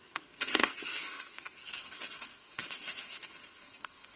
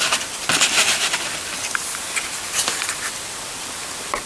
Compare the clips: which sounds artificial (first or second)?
first